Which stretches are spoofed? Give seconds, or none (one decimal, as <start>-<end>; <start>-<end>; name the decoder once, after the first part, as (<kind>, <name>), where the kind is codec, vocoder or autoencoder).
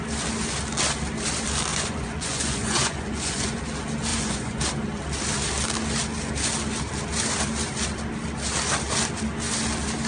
1.7-3.6 (vocoder, Vocos); 4.1-4.6